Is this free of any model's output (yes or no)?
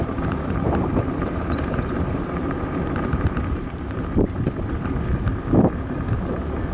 no